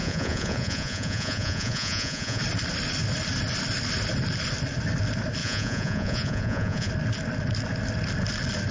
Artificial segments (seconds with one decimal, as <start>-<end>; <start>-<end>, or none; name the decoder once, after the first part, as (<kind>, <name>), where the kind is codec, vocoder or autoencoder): 0.0-2.4 (vocoder, Vocos); 5.4-6.9